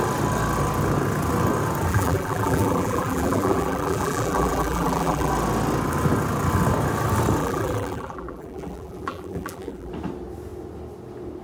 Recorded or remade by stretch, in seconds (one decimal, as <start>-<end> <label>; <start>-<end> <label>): 0.0-1.9 recorded; 1.9-5.3 remade; 5.3-7.4 recorded; 7.4-9.9 remade; 9.9-11.4 recorded